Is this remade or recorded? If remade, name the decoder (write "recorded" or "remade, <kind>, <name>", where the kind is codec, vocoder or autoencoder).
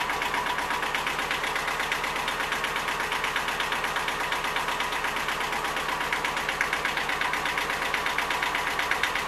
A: recorded